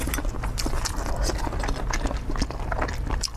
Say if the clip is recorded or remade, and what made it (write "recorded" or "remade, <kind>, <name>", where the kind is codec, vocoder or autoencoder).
recorded